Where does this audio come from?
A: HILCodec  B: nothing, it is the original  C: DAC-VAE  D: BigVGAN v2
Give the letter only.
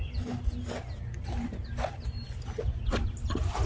B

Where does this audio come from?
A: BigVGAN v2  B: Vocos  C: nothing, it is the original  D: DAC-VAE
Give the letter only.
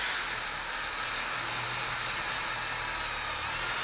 C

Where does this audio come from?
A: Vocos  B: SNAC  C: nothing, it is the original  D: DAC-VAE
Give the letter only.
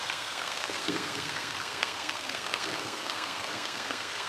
B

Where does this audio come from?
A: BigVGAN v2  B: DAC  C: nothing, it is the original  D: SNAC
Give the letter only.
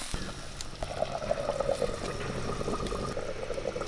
C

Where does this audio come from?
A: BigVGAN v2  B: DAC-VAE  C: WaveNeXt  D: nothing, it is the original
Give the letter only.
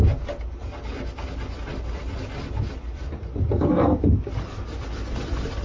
D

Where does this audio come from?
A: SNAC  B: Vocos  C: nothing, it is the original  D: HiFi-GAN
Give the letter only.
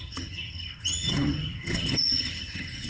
D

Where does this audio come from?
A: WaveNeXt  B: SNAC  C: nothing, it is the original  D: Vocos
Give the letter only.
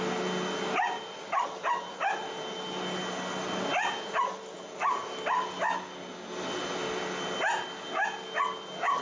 C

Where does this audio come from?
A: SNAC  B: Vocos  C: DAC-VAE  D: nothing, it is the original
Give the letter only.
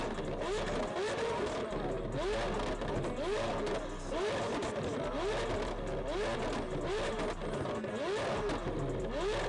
D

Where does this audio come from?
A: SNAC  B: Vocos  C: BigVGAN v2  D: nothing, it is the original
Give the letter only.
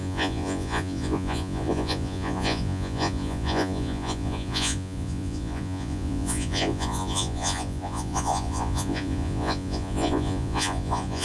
B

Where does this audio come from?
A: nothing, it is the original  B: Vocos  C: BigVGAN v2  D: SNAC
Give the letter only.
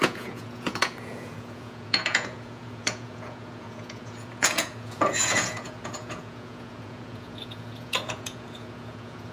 B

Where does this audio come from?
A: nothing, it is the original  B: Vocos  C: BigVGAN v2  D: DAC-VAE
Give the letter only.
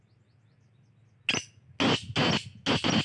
A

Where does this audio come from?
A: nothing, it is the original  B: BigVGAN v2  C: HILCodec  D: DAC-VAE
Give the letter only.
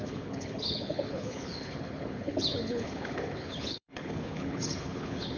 C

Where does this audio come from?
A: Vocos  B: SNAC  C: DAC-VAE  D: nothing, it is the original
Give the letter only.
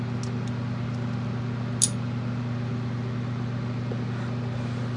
D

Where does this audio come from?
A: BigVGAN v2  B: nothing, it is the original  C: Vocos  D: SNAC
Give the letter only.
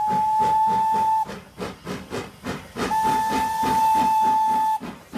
B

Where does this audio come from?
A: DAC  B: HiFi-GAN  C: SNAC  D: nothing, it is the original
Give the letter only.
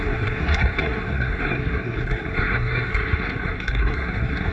C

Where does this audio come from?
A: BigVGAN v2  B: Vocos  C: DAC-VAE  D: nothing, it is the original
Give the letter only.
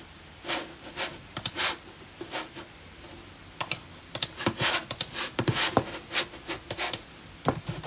D